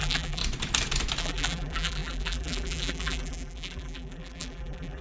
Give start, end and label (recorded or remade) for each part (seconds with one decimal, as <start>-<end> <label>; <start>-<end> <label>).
0.0-0.4 remade; 0.4-1.2 recorded; 1.2-5.0 remade